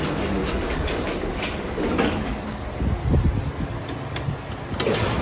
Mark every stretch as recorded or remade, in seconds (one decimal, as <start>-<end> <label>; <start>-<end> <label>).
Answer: 0.0-0.4 recorded; 0.4-2.6 remade; 2.6-5.2 recorded